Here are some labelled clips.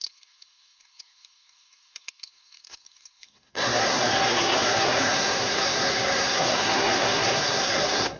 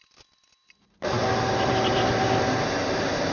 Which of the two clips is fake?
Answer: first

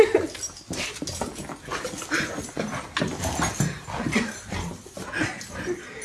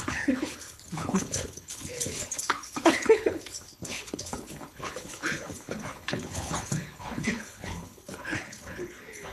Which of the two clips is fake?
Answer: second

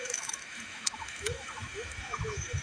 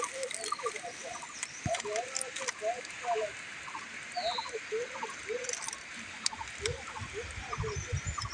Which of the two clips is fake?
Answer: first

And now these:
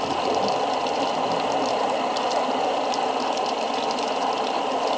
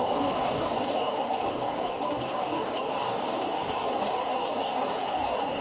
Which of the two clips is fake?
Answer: second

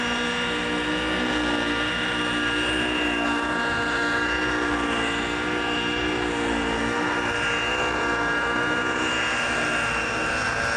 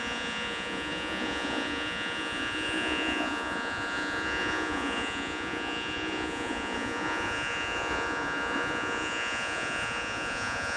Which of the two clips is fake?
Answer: second